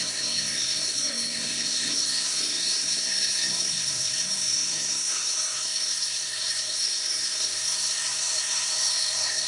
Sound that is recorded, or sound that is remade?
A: remade